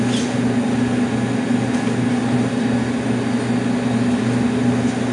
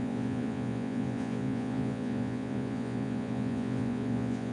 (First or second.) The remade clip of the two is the second